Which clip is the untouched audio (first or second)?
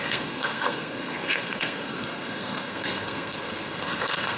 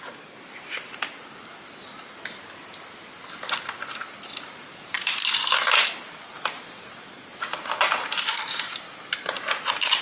second